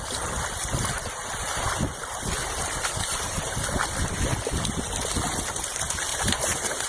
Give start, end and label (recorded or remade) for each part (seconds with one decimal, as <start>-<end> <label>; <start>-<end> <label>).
0.0-1.2 recorded; 1.2-2.4 remade; 2.4-6.1 recorded; 6.1-6.9 remade